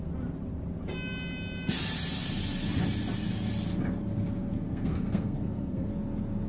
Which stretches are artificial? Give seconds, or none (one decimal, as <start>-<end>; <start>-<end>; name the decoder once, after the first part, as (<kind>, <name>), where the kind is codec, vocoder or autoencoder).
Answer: 4.5-5.9 (codec, SNAC)